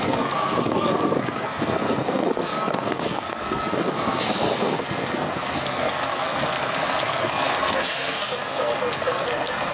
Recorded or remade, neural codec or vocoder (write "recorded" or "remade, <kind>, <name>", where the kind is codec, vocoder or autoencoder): remade, codec, SNAC